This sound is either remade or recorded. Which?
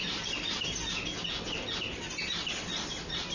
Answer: recorded